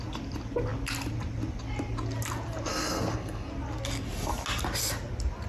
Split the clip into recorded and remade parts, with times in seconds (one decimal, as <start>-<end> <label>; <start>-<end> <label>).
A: 0.0-2.7 recorded; 2.7-3.5 remade; 3.5-5.5 recorded